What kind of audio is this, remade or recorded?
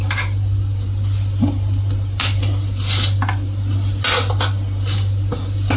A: recorded